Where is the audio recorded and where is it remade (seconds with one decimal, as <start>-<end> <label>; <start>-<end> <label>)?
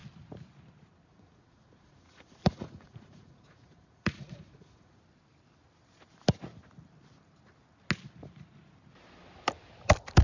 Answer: 0.0-1.1 recorded; 1.1-5.0 remade; 5.0-10.2 recorded